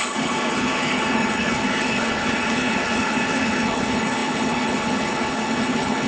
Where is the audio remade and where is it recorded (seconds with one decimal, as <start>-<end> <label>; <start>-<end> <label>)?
0.0-6.1 remade